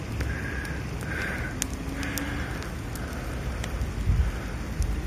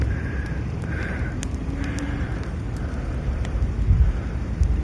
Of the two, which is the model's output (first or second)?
second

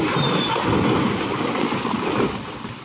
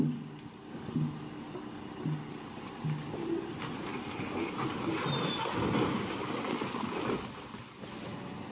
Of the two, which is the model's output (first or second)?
first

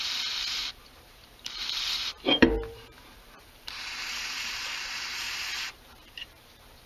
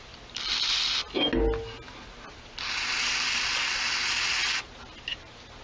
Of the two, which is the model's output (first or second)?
first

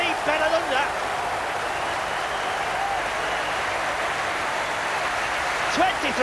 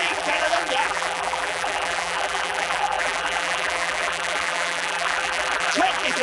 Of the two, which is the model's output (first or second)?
second